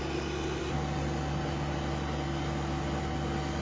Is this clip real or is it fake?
real